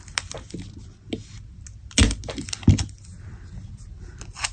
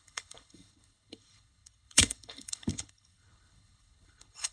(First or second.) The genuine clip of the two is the first